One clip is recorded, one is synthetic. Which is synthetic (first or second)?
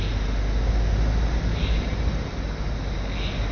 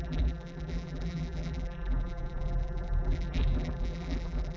second